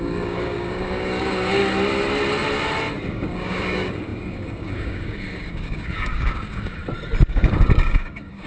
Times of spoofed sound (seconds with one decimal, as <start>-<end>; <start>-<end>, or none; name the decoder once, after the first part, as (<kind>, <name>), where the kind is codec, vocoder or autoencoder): 0.0-1.6 (codec, DAC); 3.1-6.8; 7.3-8.5